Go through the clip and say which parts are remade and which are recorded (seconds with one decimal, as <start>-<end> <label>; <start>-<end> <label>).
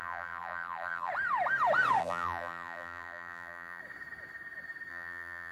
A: 0.0-1.1 remade; 1.1-2.0 recorded; 2.0-3.8 remade; 3.8-4.9 recorded; 4.9-5.5 remade